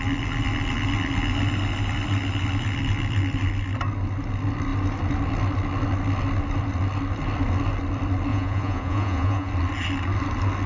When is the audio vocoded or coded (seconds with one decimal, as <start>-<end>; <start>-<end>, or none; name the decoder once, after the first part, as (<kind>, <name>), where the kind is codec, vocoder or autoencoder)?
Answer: 8.3-9.5 (vocoder, Vocos)